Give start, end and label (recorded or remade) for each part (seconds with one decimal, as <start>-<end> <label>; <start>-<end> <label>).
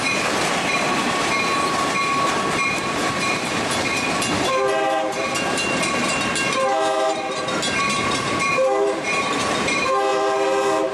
0.0-10.9 remade